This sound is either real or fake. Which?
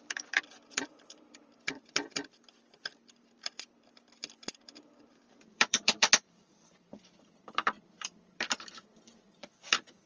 fake